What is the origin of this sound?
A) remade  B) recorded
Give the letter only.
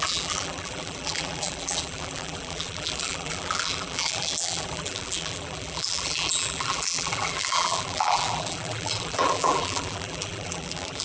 A